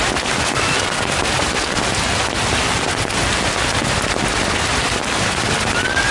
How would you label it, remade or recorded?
recorded